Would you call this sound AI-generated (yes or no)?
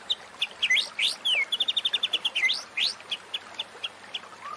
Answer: no